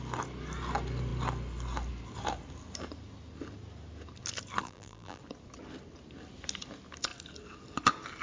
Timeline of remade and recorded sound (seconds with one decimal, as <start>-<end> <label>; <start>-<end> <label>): 0.0-4.6 recorded; 4.6-5.2 remade; 5.2-8.2 recorded